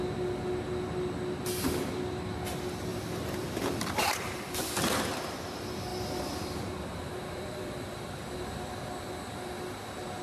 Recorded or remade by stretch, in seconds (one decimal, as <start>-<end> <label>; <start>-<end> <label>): 0.0-2.9 recorded; 2.9-4.6 remade; 4.6-5.9 recorded; 5.9-8.0 remade; 8.0-10.2 recorded